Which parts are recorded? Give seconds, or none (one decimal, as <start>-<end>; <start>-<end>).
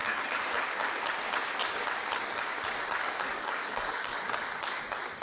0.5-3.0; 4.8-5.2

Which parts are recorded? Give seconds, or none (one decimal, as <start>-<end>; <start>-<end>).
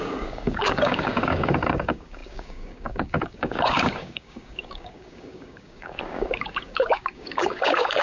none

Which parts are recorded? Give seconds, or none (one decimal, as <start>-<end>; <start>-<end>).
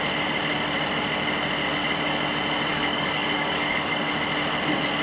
0.0-2.7; 4.1-5.0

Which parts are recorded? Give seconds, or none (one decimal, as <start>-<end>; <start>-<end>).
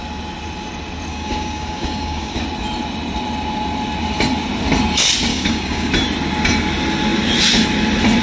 0.0-1.1; 2.4-5.3; 5.9-8.2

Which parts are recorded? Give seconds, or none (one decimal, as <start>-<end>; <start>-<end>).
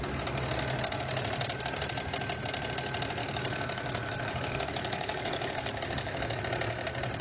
0.0-3.2; 6.4-7.2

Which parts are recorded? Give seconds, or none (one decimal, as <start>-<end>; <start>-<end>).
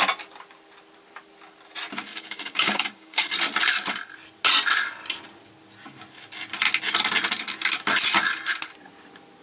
0.0-2.1; 3.3-9.4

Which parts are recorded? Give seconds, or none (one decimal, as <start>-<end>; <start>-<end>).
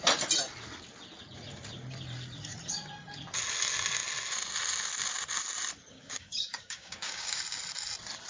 0.0-5.9; 7.4-8.3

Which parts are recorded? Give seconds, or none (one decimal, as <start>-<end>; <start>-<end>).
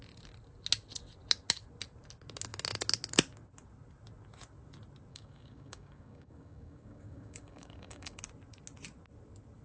0.0-5.1; 8.2-9.6